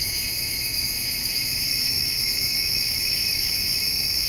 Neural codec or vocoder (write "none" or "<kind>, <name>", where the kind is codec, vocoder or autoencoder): autoencoder, DAC-VAE